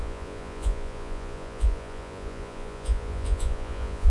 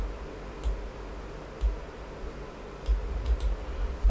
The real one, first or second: second